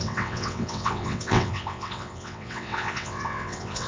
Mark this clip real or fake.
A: fake